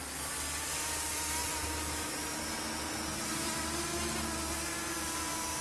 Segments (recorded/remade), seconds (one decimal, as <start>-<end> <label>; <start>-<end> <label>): 0.0-5.6 recorded